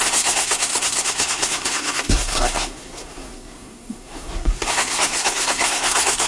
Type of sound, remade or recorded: remade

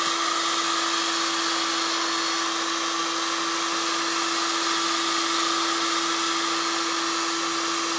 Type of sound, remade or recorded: recorded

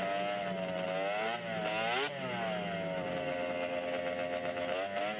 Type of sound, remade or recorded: recorded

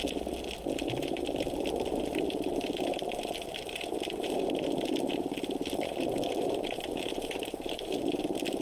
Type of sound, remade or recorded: recorded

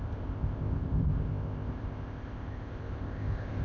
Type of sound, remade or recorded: remade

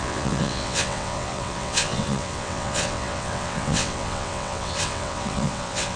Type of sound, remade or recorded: remade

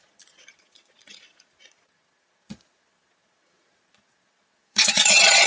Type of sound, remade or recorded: remade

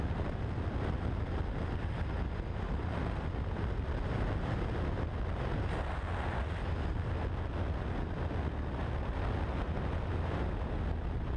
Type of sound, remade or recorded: recorded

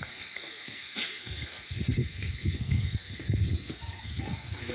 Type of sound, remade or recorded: remade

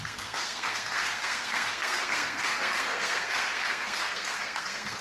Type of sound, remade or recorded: remade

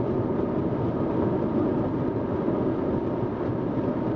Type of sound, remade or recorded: recorded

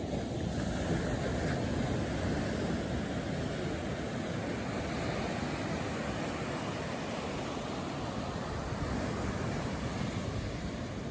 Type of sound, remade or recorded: recorded